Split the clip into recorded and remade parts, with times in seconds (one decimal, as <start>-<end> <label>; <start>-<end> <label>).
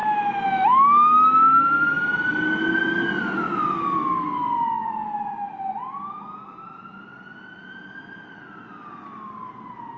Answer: 0.0-10.0 recorded